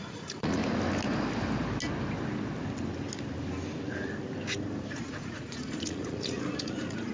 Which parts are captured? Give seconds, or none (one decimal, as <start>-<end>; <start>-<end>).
0.6-4.9